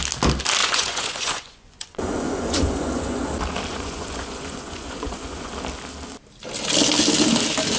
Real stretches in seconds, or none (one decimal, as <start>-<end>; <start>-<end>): 0.0-0.6; 3.2-3.7; 5.5-7.8